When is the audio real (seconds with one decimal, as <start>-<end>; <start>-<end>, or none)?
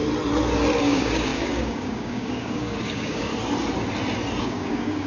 0.0-0.8; 3.3-4.4